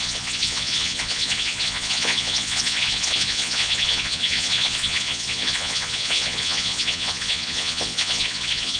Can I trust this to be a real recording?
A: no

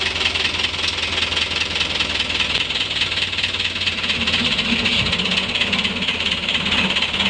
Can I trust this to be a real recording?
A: yes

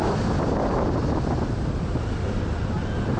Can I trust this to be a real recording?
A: yes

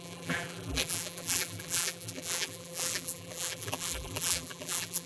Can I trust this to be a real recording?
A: no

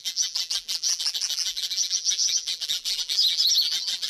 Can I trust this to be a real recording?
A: no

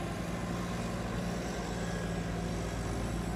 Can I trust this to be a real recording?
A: yes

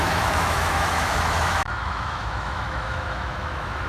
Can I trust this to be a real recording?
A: no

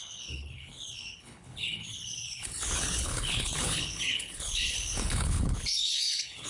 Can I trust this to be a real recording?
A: no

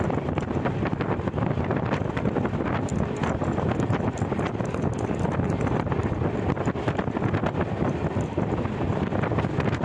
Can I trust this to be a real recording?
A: yes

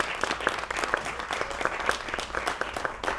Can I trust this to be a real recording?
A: yes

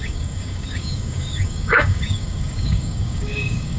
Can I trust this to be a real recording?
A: no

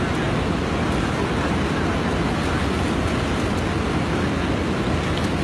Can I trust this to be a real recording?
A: yes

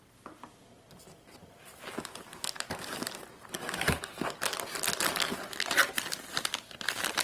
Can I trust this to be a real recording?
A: yes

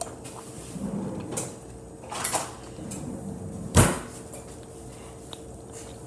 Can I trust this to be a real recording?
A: yes